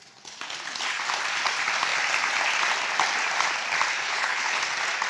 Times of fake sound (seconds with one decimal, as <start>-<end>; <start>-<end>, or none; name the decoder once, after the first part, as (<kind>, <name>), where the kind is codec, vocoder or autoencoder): 4.0-4.6 (codec, HILCodec)